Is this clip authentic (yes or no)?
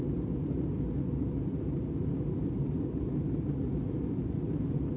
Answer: yes